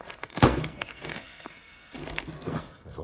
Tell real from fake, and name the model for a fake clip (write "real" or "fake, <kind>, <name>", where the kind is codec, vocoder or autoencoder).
fake, codec, SNAC